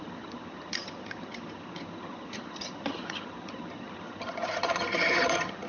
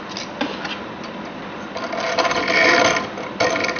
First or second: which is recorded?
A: second